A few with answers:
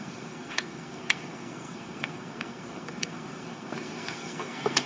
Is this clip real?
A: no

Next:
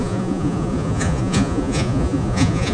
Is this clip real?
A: no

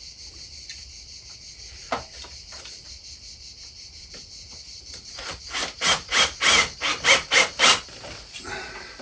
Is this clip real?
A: no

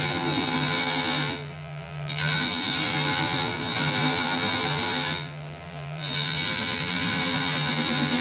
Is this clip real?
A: no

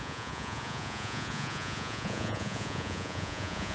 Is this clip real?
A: no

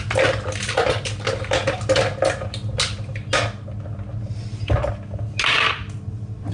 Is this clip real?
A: yes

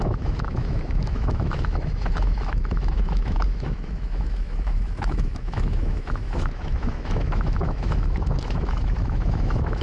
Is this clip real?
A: no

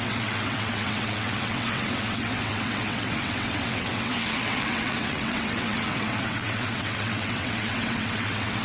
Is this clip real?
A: no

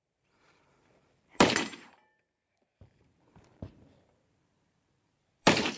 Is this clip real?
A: no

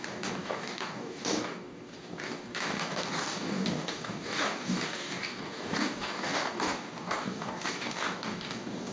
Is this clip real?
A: no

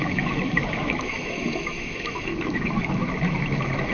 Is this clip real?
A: no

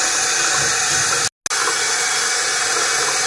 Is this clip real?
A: yes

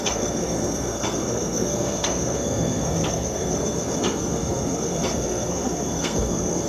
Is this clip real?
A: no